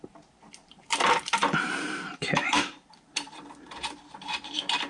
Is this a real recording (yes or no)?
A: no